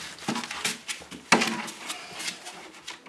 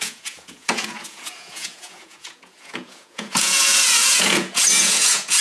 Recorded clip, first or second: first